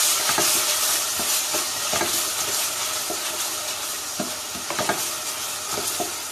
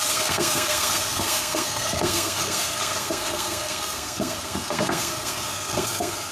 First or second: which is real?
first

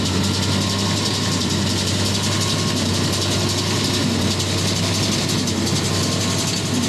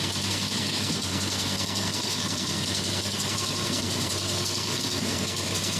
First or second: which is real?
first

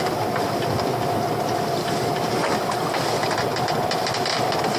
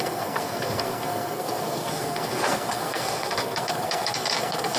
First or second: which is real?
first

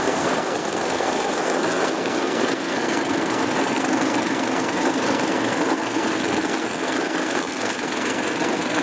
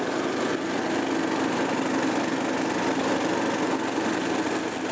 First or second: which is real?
second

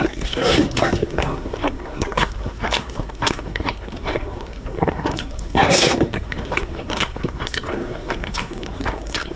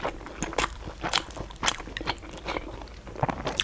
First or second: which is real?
second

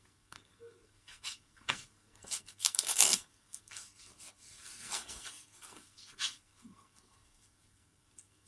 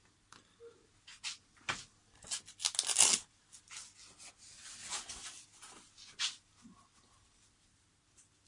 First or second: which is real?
second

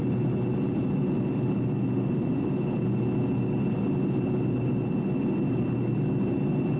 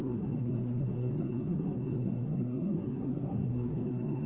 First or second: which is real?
first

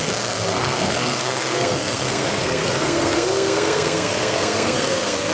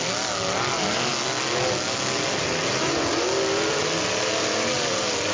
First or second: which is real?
second